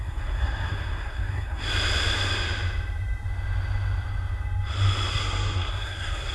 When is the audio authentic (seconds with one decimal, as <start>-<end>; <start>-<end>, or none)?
1.7-5.1